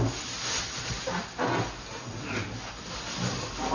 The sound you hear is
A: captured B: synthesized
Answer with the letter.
A